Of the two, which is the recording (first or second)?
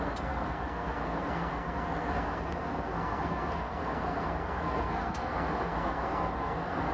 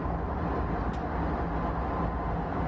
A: second